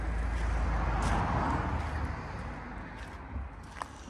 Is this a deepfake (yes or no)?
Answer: no